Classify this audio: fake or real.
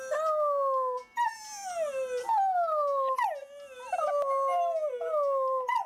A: real